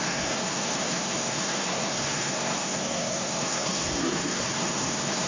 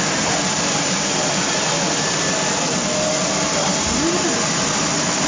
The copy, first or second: first